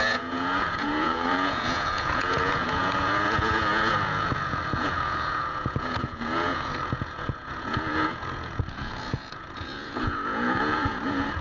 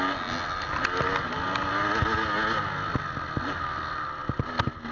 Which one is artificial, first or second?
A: first